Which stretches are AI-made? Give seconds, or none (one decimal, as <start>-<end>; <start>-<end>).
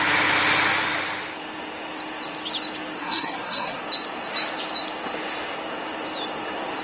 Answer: 3.0-3.8